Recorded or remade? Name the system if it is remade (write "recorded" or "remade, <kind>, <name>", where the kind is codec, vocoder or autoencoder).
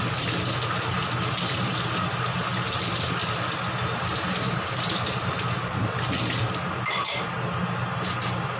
recorded